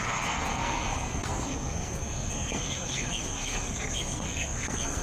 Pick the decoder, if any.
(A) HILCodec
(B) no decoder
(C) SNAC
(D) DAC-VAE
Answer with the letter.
C